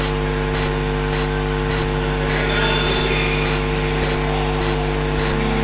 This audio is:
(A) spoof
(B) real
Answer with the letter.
B